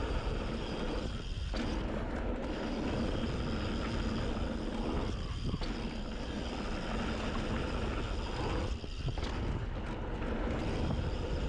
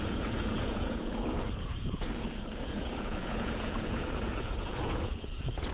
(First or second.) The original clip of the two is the first